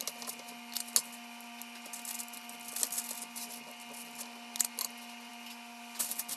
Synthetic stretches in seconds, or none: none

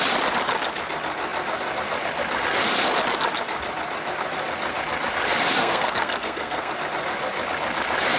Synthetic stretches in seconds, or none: 5.6-6.7 (codec, SNAC)

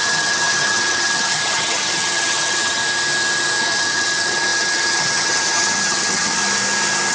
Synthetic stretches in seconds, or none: 0.0-2.8 (vocoder, HiFi-GAN); 3.6-6.4

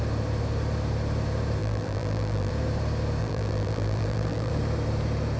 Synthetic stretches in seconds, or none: 1.6-2.5 (vocoder, BigVGAN v2); 3.2-4.5

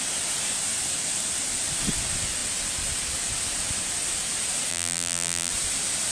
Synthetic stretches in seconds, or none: 4.7-5.5 (vocoder, BigVGAN v2)

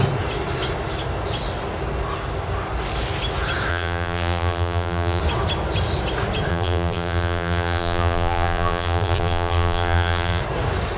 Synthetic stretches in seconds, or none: 3.7-5.2 (vocoder, BigVGAN v2); 6.5-10.4